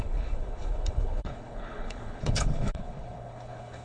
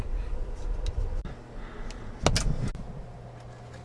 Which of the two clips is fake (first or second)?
first